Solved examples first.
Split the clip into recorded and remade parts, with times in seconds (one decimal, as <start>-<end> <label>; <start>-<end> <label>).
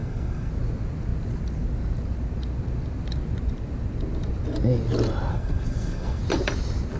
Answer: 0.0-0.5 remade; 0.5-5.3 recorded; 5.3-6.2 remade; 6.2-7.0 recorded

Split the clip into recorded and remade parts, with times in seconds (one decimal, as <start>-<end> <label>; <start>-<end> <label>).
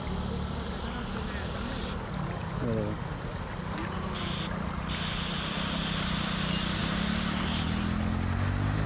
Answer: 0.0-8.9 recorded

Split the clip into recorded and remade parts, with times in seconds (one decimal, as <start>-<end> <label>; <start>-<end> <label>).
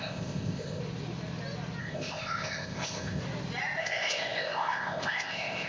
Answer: 0.0-0.8 remade; 0.8-1.8 recorded; 1.8-3.2 remade; 3.2-3.8 recorded; 3.8-5.7 remade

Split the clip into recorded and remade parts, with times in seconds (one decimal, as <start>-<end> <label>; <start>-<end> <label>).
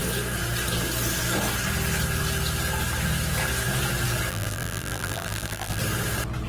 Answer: 0.0-4.3 recorded; 4.3-5.8 remade; 5.8-6.5 recorded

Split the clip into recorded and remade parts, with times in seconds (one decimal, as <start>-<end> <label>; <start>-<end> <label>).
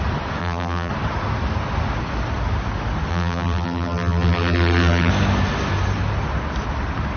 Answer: 0.0-0.4 recorded; 0.4-0.9 remade; 0.9-3.1 recorded; 3.1-5.1 remade; 5.1-7.2 recorded